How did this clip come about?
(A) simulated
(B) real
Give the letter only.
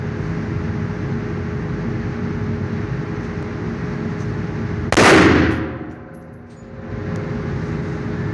B